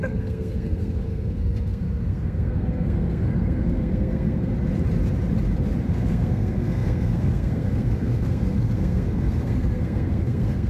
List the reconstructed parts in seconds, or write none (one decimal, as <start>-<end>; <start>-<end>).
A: 0.0-4.5; 5.9-10.7